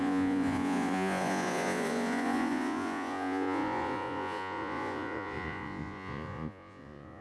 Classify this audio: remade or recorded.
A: remade